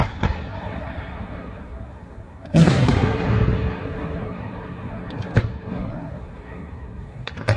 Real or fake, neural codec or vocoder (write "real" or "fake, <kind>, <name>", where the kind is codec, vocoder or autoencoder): fake, codec, SNAC